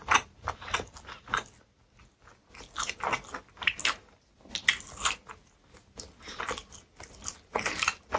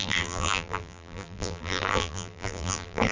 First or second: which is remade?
second